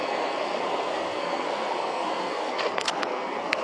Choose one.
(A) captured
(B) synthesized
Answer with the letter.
B